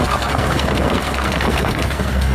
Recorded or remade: remade